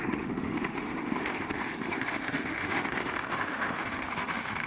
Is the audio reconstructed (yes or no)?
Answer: yes